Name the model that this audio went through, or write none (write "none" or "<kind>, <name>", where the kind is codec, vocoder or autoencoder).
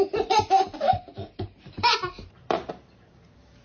vocoder, BigVGAN v2